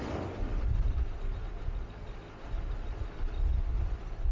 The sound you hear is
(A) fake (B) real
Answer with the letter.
B